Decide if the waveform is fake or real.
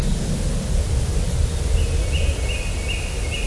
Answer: real